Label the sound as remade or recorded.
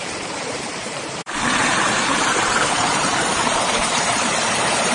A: remade